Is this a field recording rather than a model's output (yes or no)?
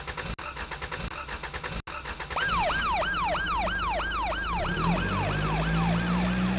yes